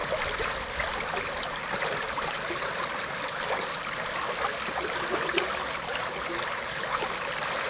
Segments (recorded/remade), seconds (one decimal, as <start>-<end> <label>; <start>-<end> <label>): 0.0-7.7 recorded